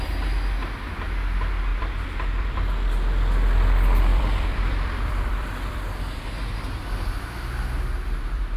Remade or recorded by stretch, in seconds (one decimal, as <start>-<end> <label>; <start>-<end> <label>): 0.0-1.7 recorded; 1.7-2.7 remade; 2.7-4.1 recorded; 4.1-6.4 remade; 6.4-8.6 recorded